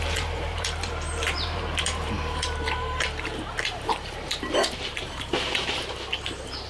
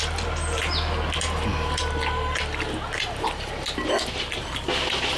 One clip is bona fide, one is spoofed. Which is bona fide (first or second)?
second